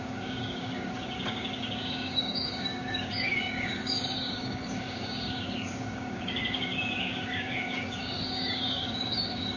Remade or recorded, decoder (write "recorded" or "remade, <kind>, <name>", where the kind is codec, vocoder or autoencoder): remade, codec, DAC